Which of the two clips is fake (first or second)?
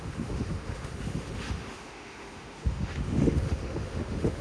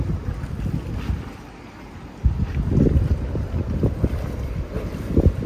first